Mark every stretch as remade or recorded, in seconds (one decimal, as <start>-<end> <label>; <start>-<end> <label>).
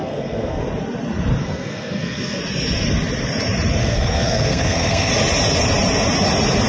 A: 0.0-0.6 remade; 0.6-1.4 recorded; 1.4-2.4 remade; 2.4-3.8 recorded; 3.8-5.1 remade; 5.1-6.7 recorded